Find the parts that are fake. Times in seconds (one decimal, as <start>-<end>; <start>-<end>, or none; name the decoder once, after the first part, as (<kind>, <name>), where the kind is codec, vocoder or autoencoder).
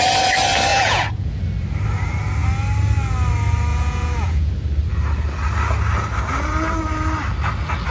0.7-1.4 (vocoder, Vocos); 3.7-4.5